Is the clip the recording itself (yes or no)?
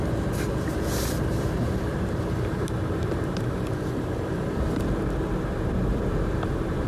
no